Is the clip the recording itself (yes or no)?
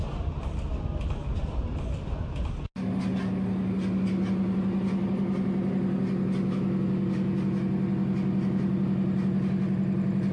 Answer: yes